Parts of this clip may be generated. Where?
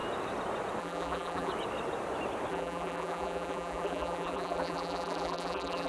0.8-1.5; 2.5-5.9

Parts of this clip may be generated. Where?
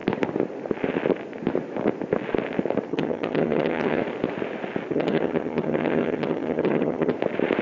2.9-4.0; 4.9-7.1